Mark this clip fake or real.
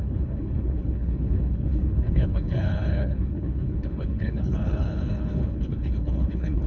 fake